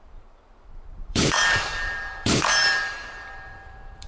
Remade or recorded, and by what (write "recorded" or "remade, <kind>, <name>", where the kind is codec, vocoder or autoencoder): remade, vocoder, BigVGAN v2